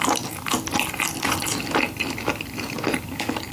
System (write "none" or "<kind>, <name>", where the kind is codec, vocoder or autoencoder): none